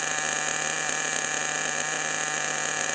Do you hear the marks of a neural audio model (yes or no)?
no